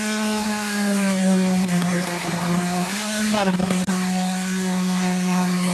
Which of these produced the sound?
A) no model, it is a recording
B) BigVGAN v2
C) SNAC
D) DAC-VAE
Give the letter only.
C